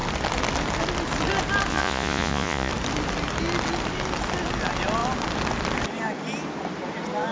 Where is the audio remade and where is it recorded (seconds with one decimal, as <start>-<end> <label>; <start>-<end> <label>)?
0.0-1.7 recorded; 1.7-2.7 remade; 2.7-7.3 recorded